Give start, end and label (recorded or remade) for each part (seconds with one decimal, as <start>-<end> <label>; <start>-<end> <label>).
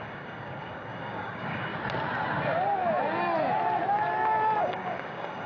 0.0-1.7 remade; 1.7-4.6 recorded; 4.6-5.5 remade